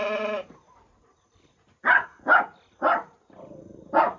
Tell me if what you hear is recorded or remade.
recorded